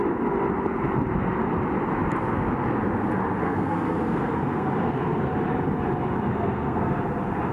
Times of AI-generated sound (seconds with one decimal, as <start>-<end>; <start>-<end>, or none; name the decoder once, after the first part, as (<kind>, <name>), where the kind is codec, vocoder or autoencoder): 3.4-5.3 (codec, SNAC); 6.3-7.0